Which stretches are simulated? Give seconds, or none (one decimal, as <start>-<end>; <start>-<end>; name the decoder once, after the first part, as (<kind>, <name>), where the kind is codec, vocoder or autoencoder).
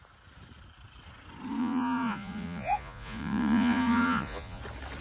1.6-4.6 (vocoder, Vocos)